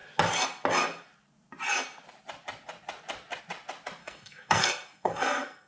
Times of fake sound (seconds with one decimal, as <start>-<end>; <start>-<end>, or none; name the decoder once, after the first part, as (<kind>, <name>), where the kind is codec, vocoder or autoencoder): 4.0-5.7 (codec, SNAC)